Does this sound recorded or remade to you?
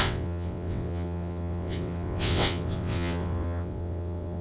remade